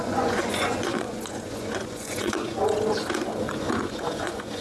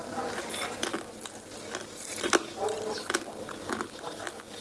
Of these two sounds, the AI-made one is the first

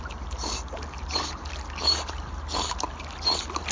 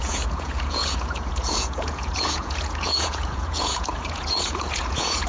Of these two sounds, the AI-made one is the second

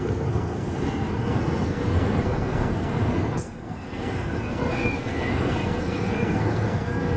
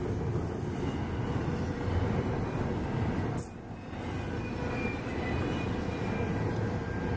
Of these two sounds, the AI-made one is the first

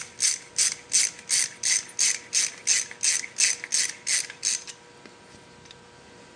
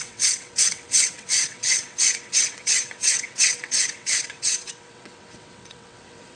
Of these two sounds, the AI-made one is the second